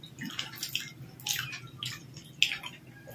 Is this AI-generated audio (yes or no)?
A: no